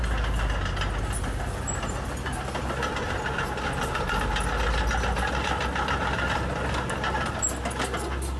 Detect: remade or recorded recorded